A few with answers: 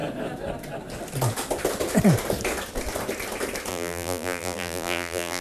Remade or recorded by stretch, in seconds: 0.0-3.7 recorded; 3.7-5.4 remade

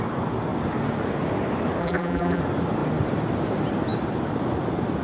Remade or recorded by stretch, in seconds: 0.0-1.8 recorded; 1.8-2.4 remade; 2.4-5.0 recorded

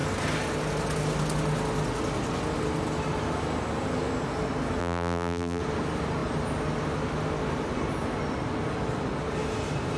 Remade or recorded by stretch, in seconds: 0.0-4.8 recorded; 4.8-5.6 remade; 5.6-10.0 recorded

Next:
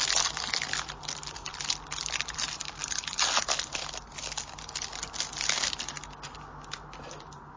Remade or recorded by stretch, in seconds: 0.0-1.5 recorded; 1.5-2.4 remade; 2.4-2.8 recorded; 2.8-3.7 remade; 3.7-7.6 recorded

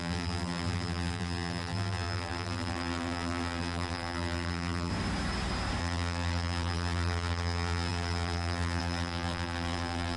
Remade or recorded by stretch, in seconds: 0.0-4.9 remade; 4.9-5.8 recorded; 5.8-10.2 remade

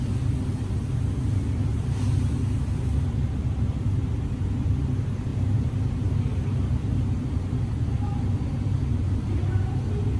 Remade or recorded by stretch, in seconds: 0.0-1.7 recorded; 1.7-2.3 remade; 2.3-5.3 recorded; 5.3-7.1 remade; 7.1-10.2 recorded